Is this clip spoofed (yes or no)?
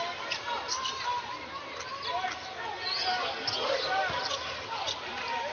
no